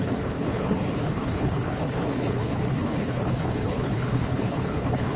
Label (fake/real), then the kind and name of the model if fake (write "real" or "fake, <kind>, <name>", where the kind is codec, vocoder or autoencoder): fake, codec, HILCodec